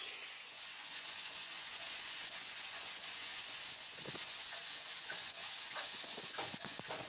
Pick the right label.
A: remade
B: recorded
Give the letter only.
A